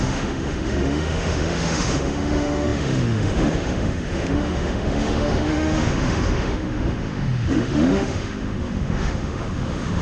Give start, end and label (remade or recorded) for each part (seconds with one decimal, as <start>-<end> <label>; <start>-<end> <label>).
0.0-10.0 remade